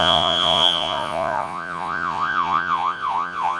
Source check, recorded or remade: remade